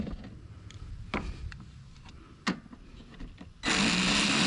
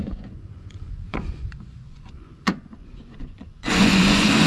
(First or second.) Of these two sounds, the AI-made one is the second